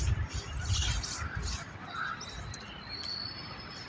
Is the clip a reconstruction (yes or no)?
no